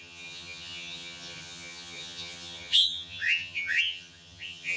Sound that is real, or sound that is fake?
fake